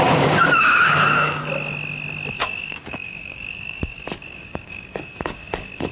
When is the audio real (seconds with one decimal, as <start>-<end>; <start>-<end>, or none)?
1.5-2.3